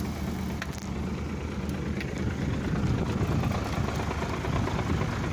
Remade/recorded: recorded